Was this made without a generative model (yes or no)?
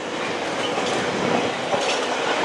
yes